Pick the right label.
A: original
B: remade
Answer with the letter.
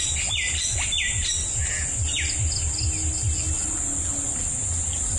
A